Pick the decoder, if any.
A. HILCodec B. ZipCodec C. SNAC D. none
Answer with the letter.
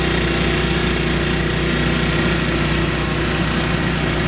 D